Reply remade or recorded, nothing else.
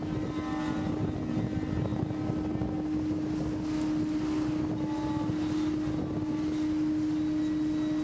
recorded